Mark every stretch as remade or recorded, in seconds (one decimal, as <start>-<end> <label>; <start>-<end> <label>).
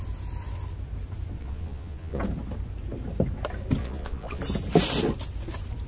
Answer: 0.0-1.4 recorded; 1.4-2.2 remade; 2.2-3.8 recorded; 3.8-4.4 remade; 4.4-5.9 recorded